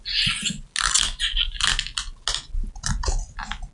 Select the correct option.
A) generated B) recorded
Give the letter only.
B